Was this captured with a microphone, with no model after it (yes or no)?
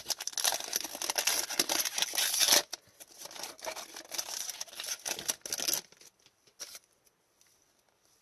yes